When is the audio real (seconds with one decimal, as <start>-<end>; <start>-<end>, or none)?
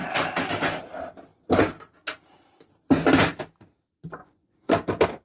0.0-4.2; 4.7-5.2